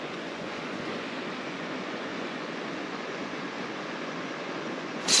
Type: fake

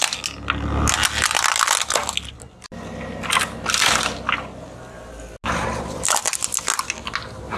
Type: real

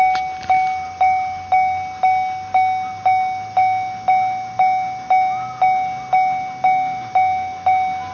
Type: real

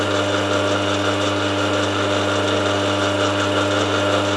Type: real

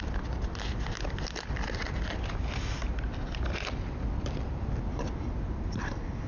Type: real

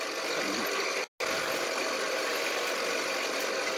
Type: real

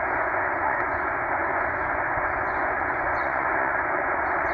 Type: fake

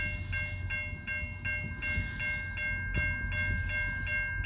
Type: real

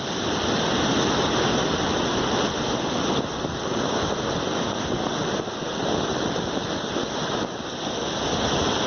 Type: real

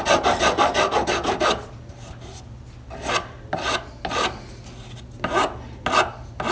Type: real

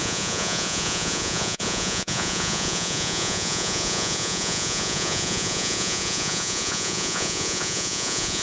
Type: fake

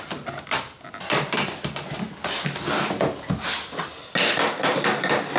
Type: real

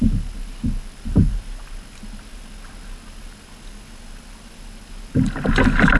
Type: real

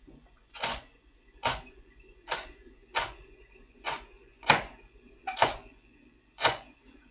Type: fake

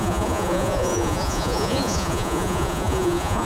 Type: fake